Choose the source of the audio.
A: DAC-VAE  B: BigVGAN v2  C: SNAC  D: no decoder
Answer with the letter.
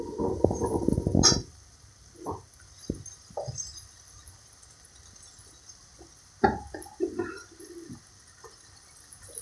D